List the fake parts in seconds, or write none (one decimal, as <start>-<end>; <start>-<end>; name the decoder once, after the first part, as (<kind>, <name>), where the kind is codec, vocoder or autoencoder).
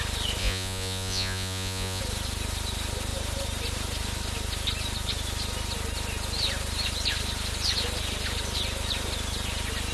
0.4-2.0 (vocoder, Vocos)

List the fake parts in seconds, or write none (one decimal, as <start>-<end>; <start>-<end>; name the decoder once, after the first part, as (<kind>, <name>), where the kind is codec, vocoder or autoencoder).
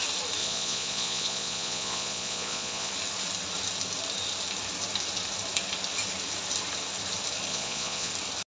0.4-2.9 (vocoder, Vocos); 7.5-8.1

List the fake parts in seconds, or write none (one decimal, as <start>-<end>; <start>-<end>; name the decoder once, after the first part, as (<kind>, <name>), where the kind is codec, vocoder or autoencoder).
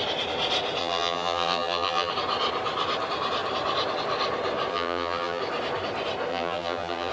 0.8-2.1 (vocoder, BigVGAN v2); 4.7-5.4; 6.3-7.1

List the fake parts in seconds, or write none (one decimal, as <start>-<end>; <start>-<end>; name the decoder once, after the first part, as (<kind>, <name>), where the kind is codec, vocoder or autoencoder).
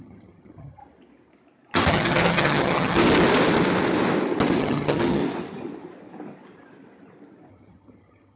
0.0-0.8 (vocoder, HiFi-GAN); 1.9-3.0; 4.6-5.2; 7.5-8.4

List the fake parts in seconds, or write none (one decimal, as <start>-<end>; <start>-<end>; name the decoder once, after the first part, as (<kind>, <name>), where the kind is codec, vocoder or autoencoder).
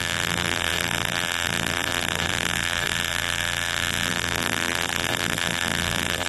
0.0-6.3 (vocoder, BigVGAN v2)